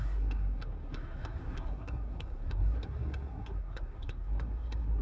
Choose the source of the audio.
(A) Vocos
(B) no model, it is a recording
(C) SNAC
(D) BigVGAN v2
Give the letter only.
C